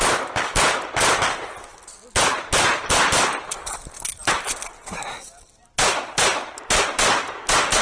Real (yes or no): yes